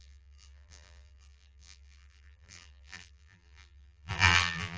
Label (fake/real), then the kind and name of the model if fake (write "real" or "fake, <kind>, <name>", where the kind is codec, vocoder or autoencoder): fake, vocoder, BigVGAN v2